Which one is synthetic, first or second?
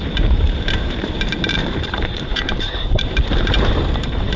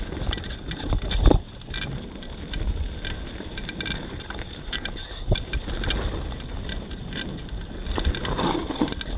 first